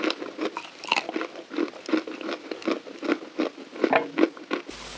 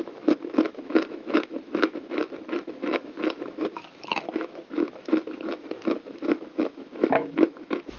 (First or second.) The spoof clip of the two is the second